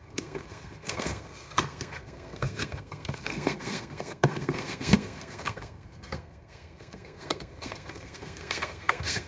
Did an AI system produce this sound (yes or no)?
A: yes